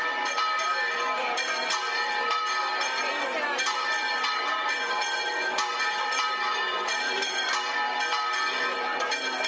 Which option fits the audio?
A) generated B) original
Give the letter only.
A